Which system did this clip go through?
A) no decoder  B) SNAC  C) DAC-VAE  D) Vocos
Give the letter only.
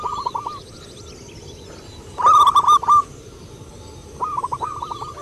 A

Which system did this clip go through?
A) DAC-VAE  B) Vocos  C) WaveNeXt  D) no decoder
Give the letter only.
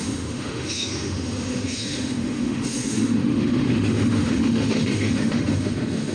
A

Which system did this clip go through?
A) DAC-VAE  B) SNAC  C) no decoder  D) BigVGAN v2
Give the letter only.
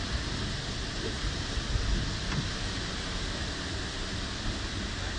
C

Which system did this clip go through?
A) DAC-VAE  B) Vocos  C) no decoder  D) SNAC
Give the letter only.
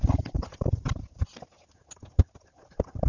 C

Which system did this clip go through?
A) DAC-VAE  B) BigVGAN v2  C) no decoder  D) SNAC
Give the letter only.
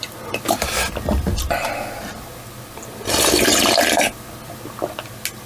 C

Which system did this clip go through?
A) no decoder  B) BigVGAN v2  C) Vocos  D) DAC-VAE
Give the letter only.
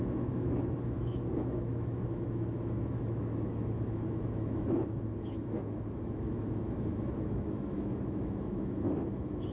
D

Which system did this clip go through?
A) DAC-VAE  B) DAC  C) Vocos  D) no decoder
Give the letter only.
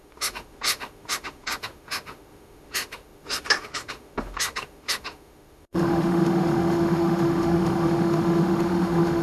A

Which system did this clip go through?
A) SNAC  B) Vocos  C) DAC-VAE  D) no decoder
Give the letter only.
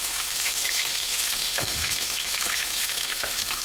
C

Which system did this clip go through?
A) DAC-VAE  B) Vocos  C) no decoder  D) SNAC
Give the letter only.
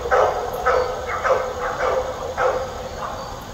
C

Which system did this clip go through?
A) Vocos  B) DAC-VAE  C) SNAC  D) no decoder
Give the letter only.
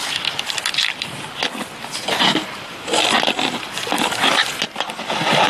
D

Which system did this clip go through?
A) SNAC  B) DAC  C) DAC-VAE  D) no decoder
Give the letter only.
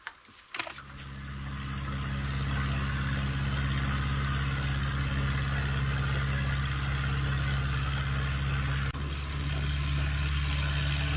D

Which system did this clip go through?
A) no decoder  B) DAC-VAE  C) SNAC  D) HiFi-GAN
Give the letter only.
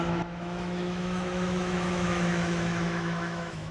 B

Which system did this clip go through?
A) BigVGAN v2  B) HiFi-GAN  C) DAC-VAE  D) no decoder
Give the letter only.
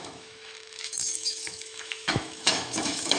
C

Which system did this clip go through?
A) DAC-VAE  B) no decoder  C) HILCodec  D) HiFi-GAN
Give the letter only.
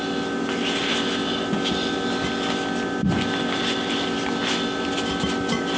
B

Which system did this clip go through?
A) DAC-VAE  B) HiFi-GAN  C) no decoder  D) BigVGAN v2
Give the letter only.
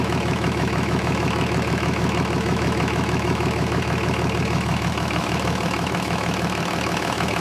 A